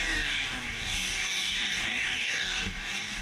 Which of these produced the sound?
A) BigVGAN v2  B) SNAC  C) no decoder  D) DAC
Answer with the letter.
D